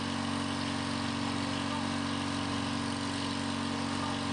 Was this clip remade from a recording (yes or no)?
no